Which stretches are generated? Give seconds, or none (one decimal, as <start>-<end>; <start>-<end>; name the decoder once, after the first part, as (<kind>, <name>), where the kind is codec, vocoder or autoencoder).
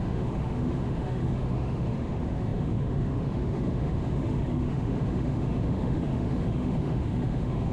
0.0-7.7 (autoencoder, DAC-VAE)